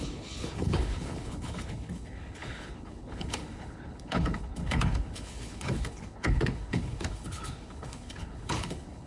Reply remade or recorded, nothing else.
remade